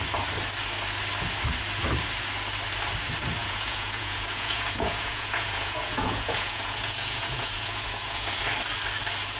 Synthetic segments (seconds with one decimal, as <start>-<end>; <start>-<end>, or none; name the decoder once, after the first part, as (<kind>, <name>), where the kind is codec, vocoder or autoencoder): 3.4-8.4 (vocoder, Vocos)